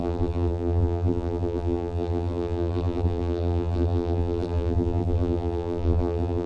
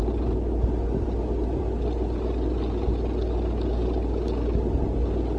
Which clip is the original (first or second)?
second